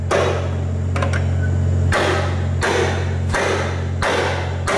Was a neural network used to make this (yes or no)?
no